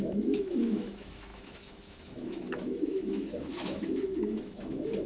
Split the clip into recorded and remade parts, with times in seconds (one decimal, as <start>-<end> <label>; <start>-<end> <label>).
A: 0.0-5.1 remade